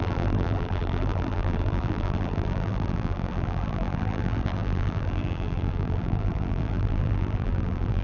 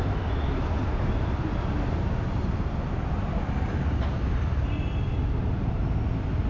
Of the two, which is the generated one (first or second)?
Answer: first